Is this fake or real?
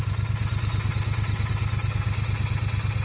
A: real